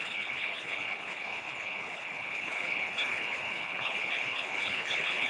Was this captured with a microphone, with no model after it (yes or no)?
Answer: no